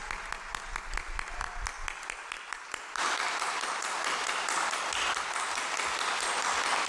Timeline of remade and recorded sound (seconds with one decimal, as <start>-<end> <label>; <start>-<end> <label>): 0.0-1.4 recorded; 1.4-5.2 remade; 5.2-6.9 recorded